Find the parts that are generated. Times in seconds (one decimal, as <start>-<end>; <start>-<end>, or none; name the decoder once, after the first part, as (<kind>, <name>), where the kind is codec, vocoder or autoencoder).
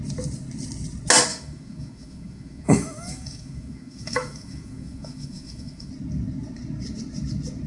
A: 1.3-5.9 (autoencoder, DAC-VAE)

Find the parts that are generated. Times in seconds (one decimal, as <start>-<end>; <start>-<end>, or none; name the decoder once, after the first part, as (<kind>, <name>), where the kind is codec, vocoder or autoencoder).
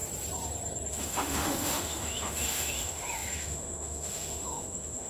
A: 0.9-5.1 (autoencoder, DAC-VAE)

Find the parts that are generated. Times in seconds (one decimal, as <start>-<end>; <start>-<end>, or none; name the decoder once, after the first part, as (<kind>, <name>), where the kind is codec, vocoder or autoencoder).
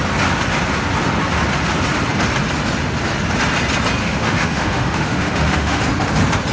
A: 4.0-5.8 (autoencoder, DAC-VAE)